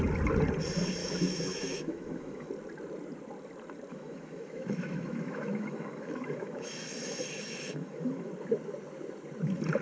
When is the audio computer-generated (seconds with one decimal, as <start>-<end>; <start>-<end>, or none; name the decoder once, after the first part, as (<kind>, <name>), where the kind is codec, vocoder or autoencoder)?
1.0-2.5 (autoencoder, DAC-VAE); 3.9-8.3